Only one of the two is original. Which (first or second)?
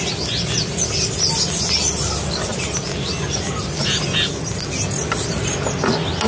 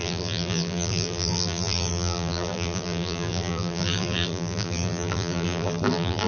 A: first